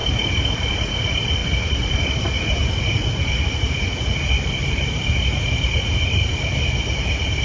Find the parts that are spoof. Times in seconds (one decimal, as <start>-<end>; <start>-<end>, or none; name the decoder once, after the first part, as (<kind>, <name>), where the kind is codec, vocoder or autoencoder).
none